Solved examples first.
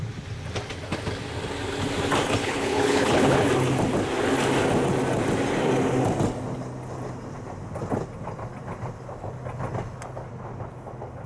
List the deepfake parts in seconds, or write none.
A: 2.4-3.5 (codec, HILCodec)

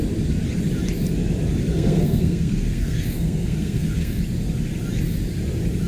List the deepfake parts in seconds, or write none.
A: 1.7-4.2 (codec, SNAC)

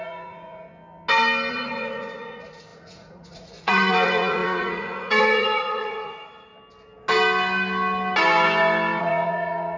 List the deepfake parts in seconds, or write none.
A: 0.0-0.7 (vocoder, Vocos); 1.5-6.5; 9.0-9.8